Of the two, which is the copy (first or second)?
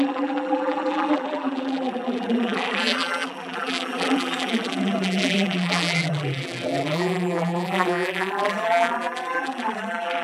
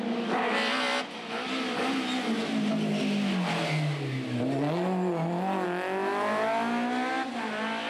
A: first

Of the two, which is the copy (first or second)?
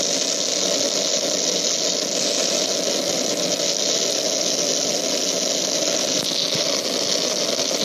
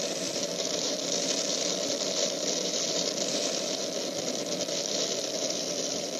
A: second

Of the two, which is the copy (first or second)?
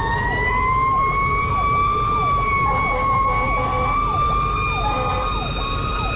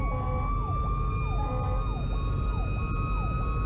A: first